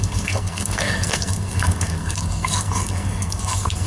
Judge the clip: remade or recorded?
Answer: remade